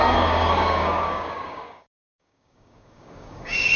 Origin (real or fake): fake